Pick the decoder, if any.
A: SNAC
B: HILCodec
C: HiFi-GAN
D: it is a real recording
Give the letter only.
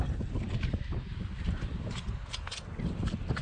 D